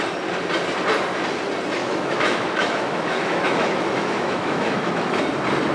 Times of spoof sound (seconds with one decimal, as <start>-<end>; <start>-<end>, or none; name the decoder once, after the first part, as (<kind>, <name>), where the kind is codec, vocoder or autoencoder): 1.8-5.2 (autoencoder, DAC-VAE)